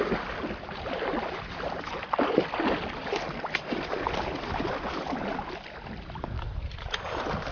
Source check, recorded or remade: recorded